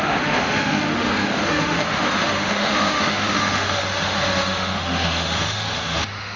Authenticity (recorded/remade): remade